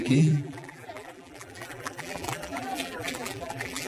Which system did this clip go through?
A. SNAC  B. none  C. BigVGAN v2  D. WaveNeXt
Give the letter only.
C